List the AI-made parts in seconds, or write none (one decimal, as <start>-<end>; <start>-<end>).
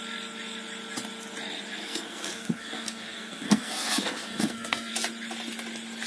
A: 1.8-4.9